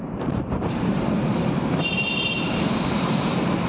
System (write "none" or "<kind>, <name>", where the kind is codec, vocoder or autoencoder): vocoder, BigVGAN v2